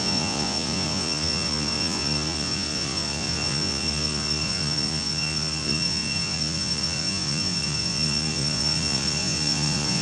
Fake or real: fake